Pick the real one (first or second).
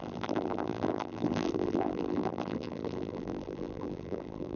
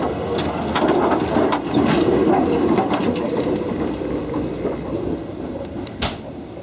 second